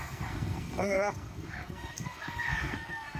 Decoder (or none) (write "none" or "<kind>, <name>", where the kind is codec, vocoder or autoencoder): codec, SNAC